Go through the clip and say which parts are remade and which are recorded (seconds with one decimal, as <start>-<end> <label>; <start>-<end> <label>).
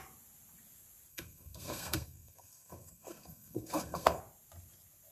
0.0-1.1 recorded; 1.1-4.2 remade; 4.2-5.1 recorded